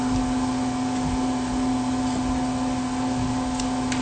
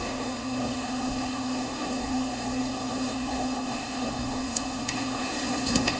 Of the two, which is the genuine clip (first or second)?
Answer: first